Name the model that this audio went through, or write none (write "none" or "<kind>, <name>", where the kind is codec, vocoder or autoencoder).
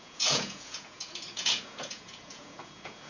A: vocoder, Vocos